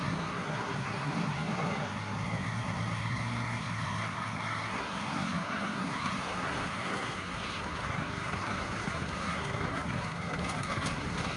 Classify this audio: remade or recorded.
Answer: remade